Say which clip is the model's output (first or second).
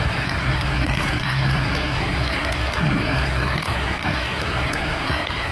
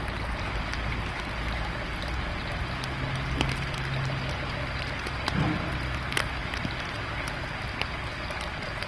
first